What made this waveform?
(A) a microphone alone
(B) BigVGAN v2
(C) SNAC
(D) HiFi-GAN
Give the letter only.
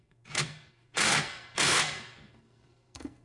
C